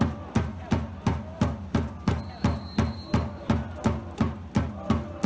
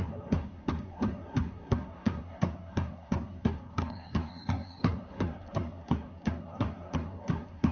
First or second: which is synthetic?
second